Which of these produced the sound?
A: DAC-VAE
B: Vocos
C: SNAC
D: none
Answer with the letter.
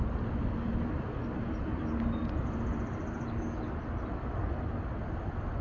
D